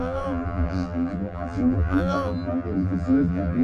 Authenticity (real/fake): fake